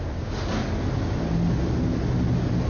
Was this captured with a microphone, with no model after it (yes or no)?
yes